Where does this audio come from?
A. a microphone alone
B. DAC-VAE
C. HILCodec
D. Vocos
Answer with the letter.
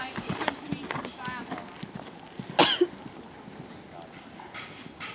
A